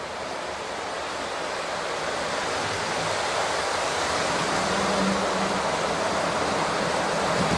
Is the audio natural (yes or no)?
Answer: yes